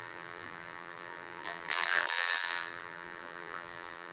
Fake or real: fake